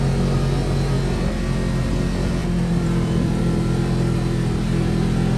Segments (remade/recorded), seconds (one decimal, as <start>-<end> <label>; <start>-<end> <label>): 0.0-2.4 recorded; 2.4-3.4 remade; 3.4-5.4 recorded